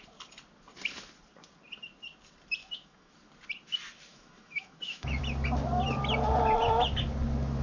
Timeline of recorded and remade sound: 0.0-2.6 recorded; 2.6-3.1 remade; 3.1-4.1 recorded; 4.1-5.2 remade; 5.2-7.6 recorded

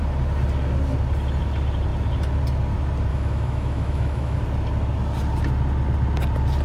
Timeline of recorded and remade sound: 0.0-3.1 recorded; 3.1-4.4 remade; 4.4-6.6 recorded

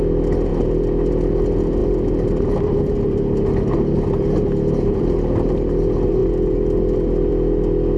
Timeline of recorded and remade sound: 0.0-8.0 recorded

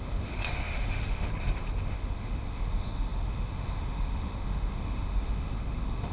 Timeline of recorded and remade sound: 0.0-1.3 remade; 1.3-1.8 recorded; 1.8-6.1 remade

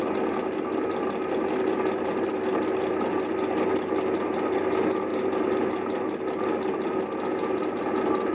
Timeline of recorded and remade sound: 0.0-8.3 recorded

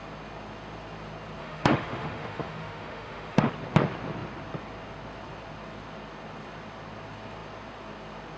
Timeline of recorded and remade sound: 0.0-1.4 recorded; 1.4-3.5 remade; 3.5-8.4 recorded

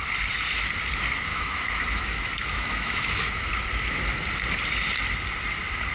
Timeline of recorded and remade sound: 0.0-1.3 recorded; 1.3-3.5 remade; 3.5-5.9 recorded

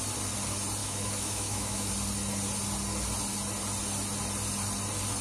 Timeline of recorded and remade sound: 0.0-0.8 recorded; 0.8-1.9 remade; 1.9-5.2 recorded